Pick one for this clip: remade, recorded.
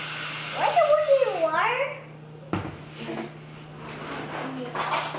recorded